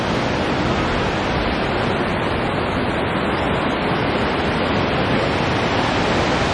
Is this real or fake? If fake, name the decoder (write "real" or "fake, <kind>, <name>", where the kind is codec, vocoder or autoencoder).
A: real